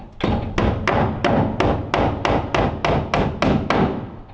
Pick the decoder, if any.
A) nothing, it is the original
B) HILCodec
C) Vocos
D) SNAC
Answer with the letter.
A